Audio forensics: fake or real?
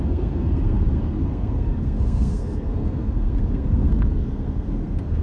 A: fake